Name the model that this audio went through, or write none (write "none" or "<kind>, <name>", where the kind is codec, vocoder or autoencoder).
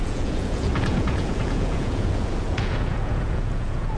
vocoder, Vocos